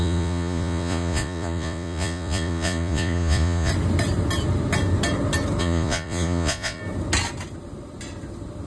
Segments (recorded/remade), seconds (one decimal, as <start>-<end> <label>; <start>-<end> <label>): 0.0-3.7 remade; 3.7-5.6 recorded; 5.6-6.8 remade; 6.8-8.7 recorded

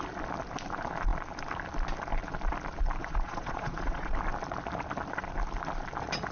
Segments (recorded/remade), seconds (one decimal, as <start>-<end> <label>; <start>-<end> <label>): 0.0-3.0 recorded; 3.0-4.1 remade; 4.1-6.3 recorded

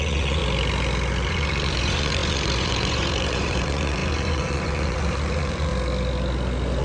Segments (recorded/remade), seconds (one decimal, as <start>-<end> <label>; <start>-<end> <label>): 0.0-0.4 remade; 0.4-1.3 recorded; 1.3-5.7 remade; 5.7-6.8 recorded

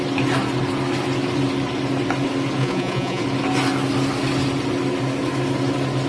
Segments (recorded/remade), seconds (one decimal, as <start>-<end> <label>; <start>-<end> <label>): 0.0-2.6 recorded; 2.6-3.2 remade; 3.2-6.1 recorded

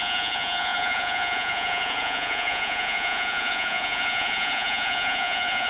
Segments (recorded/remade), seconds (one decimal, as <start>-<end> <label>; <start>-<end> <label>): 0.0-5.7 remade